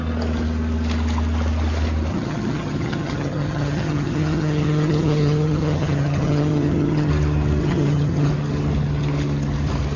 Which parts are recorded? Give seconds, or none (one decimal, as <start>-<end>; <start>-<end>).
0.0-2.1; 7.1-7.6; 8.3-10.0